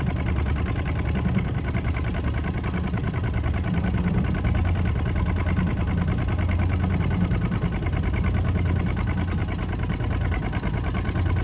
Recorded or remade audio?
recorded